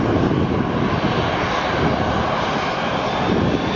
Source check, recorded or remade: recorded